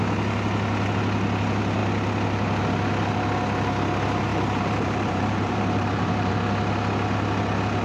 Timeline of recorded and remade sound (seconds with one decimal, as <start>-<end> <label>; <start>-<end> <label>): 0.0-4.3 recorded; 4.3-6.3 remade; 6.3-7.8 recorded